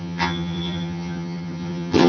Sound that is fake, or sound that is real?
fake